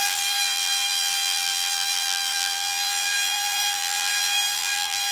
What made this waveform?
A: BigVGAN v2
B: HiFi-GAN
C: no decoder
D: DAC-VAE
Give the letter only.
A